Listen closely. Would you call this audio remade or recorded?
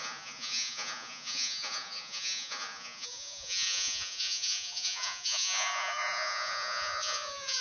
remade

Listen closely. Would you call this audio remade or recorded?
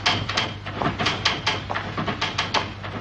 recorded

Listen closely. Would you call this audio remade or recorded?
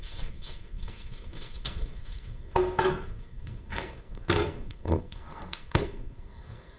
remade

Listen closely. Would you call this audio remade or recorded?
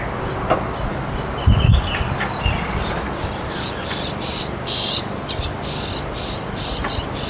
recorded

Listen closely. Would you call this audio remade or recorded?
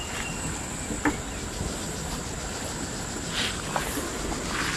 recorded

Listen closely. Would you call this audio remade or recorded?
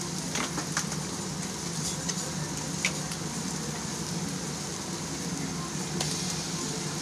recorded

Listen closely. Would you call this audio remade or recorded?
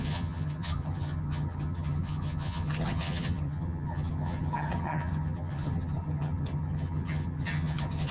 remade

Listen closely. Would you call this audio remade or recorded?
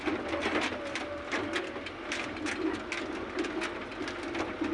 recorded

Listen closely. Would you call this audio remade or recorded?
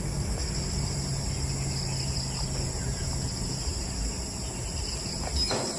recorded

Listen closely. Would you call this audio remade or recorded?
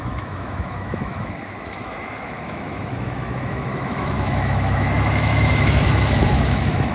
remade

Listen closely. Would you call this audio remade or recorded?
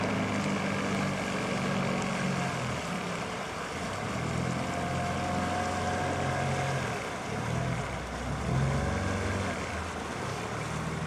recorded